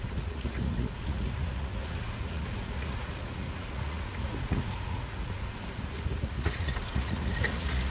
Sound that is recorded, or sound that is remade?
remade